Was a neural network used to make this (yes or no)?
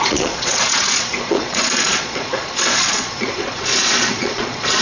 yes